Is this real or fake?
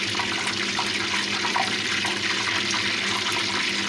real